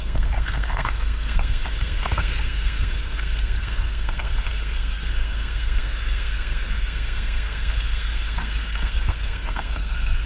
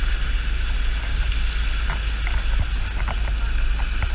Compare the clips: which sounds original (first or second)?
second